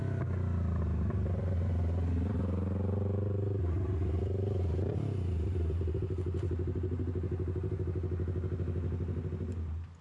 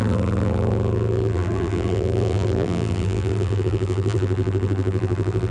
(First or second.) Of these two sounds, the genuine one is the first